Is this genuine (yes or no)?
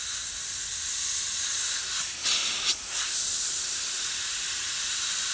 yes